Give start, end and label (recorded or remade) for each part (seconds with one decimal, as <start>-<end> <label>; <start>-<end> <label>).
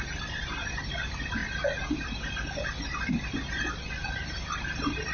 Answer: 0.0-5.1 recorded